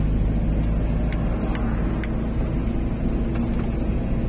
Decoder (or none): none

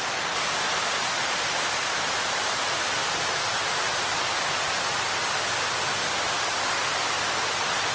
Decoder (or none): none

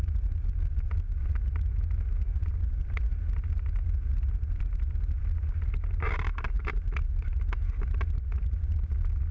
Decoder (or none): none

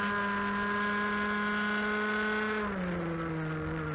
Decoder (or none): none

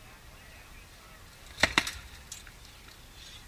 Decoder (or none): none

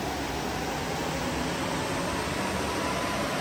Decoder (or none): none